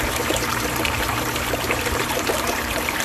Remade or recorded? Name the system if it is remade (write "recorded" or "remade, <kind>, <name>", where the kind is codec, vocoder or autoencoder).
remade, vocoder, BigVGAN v2